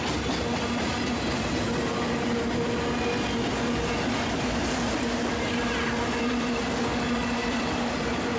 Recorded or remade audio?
recorded